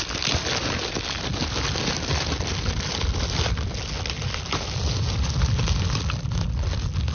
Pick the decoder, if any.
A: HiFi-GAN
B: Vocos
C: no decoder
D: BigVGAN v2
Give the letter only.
C